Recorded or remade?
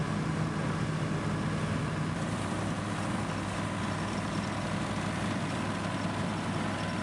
recorded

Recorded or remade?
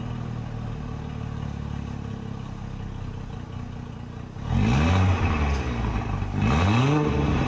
recorded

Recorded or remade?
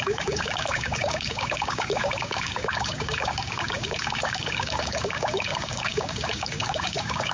remade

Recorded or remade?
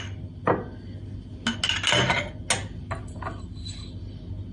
recorded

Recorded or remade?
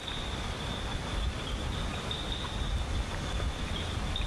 recorded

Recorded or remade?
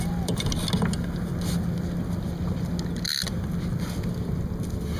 recorded